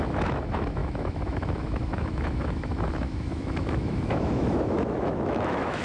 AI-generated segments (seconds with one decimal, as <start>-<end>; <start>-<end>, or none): 0.0-5.8